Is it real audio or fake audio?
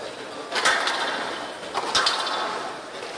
real